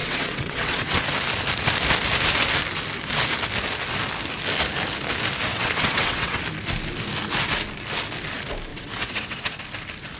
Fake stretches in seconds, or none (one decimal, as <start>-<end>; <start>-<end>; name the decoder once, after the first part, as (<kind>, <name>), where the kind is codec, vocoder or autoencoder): 0.0-1.0 (vocoder, WaveNeXt); 5.5-6.4; 8.7-9.6